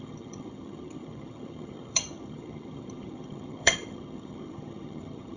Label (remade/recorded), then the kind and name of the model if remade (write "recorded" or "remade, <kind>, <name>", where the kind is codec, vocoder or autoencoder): remade, vocoder, HiFi-GAN